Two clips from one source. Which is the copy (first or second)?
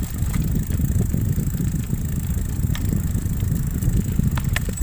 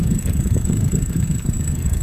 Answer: second